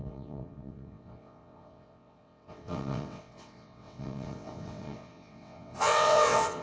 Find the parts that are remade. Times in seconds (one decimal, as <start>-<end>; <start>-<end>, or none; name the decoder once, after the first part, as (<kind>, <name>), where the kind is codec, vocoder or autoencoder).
0.0-6.6 (vocoder, WaveNeXt)